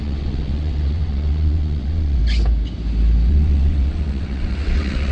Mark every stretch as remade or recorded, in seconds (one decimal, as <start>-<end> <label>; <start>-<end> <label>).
0.0-2.2 remade; 2.2-3.3 recorded; 3.3-5.1 remade

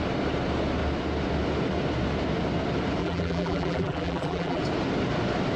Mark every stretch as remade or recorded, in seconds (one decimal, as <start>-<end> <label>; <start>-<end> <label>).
0.0-3.0 recorded; 3.0-4.6 remade; 4.6-5.6 recorded

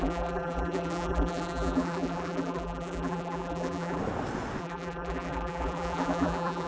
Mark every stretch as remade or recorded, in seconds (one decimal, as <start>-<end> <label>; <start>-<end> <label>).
0.0-4.0 remade; 4.0-4.6 recorded; 4.6-6.7 remade

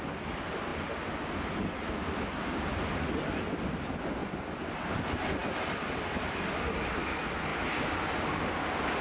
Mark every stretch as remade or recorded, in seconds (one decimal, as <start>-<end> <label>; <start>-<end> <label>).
0.0-4.2 recorded; 4.2-4.7 remade; 4.7-5.4 recorded; 5.4-7.0 remade; 7.0-9.0 recorded